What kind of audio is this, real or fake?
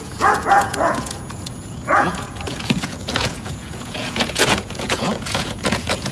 fake